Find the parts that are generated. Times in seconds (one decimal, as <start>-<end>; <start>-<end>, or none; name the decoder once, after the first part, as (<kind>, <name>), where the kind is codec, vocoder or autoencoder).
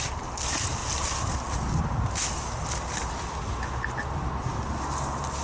none